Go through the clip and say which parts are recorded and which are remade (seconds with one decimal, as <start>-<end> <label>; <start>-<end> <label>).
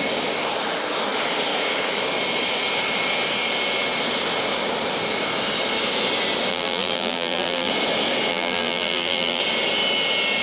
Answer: 0.0-6.5 recorded; 6.5-7.7 remade; 7.7-8.3 recorded; 8.3-9.4 remade; 9.4-10.4 recorded